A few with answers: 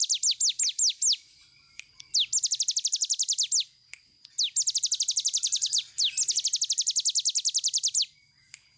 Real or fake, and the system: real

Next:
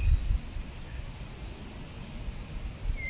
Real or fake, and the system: real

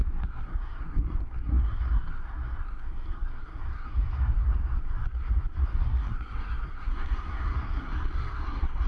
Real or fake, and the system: fake, codec, SNAC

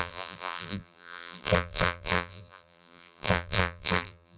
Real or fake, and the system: fake, vocoder, BigVGAN v2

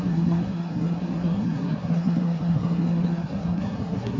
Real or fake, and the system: fake, codec, SNAC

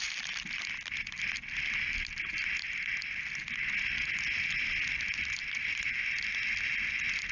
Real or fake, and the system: real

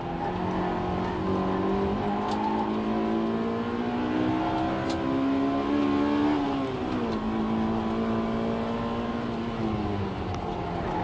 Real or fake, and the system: real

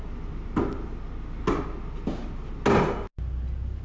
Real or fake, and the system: real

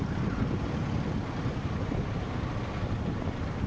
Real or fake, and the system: real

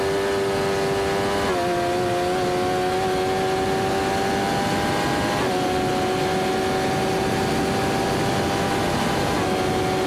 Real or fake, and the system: real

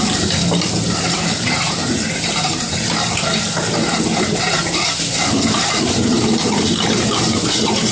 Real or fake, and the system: real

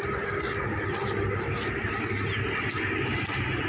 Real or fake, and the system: real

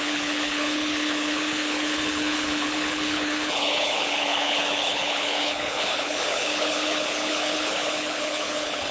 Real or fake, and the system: fake, codec, HILCodec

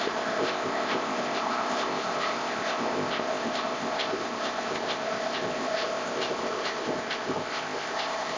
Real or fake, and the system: fake, codec, ZipCodec